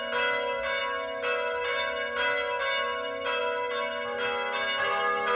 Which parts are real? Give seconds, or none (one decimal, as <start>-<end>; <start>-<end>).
0.0-5.4